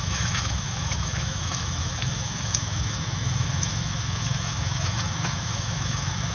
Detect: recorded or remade remade